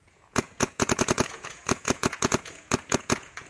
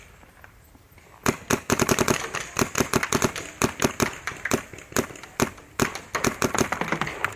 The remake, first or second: first